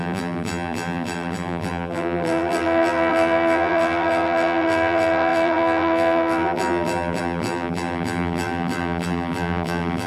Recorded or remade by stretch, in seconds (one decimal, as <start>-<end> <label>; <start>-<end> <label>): 0.0-10.1 remade